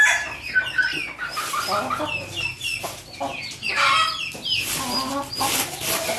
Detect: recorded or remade recorded